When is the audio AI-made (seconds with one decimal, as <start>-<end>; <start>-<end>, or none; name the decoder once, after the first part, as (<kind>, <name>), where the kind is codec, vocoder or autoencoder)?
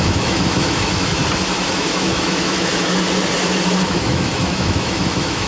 0.0-1.2 (autoencoder, DAC-VAE); 1.7-2.7; 3.9-5.5